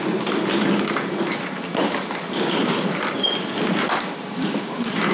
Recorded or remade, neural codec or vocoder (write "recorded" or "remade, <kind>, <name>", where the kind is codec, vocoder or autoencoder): recorded